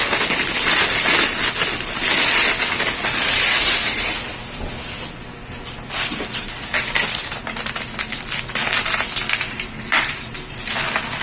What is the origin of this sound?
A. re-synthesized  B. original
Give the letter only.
B